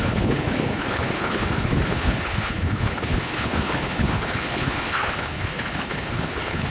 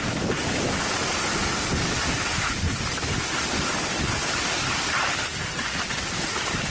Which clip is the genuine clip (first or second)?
second